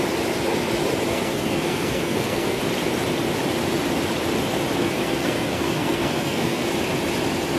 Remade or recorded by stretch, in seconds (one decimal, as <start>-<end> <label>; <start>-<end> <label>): 0.0-1.1 recorded; 1.1-2.6 remade; 2.6-4.8 recorded; 4.8-6.7 remade; 6.7-7.6 recorded